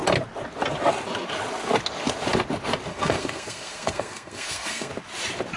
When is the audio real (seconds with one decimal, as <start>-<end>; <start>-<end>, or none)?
0.0-2.9; 4.9-5.6